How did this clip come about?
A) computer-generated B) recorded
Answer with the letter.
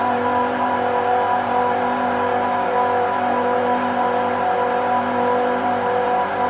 A